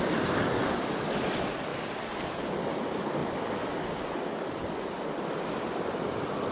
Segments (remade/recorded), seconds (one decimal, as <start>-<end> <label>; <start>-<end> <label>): 0.0-1.7 remade; 1.7-2.2 recorded; 2.2-3.2 remade; 3.2-5.5 recorded; 5.5-6.5 remade